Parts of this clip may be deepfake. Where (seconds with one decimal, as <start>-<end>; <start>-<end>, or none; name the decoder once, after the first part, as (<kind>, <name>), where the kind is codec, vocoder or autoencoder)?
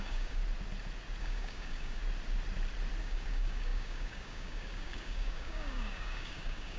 0.0-0.4 (codec, DAC); 1.2-2.0; 3.0-6.8